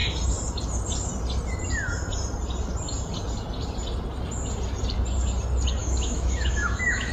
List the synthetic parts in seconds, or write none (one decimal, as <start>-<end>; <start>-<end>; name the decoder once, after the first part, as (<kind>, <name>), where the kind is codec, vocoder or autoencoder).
5.8-7.1 (autoencoder, DAC-VAE)